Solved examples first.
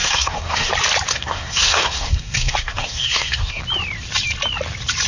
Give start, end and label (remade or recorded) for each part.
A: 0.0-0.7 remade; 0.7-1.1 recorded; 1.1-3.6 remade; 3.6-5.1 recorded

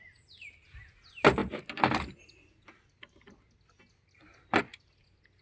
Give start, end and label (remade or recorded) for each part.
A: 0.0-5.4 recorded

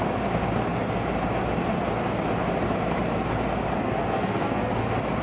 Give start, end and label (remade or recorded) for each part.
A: 0.0-3.8 recorded; 3.8-4.7 remade; 4.7-5.2 recorded

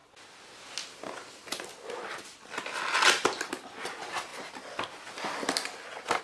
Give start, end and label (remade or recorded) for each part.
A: 0.0-6.2 recorded